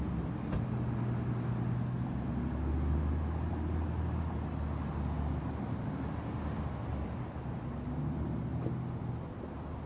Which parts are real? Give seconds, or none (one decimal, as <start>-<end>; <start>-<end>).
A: 0.0-9.9